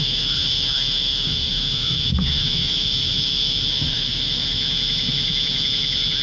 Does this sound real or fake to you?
fake